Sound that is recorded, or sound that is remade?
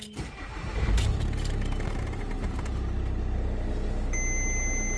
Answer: recorded